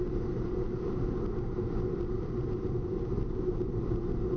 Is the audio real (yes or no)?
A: yes